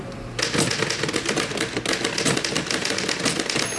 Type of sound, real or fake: real